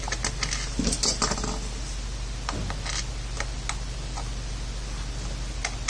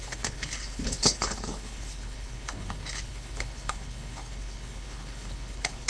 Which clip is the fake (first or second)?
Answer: second